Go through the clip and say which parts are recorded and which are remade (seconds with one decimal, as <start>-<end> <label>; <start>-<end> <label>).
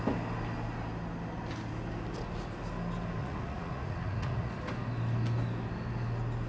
0.0-3.2 recorded; 3.2-4.5 remade; 4.5-6.5 recorded